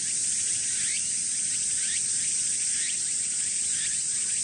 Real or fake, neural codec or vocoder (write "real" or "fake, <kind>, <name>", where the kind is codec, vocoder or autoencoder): real